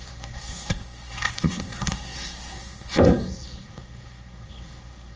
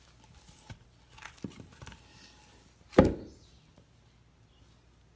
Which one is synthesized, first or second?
first